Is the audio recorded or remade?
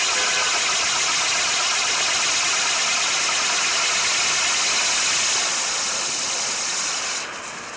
recorded